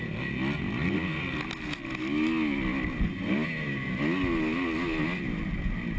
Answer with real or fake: real